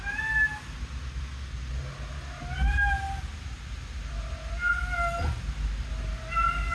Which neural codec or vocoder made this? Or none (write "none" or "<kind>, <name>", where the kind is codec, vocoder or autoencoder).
none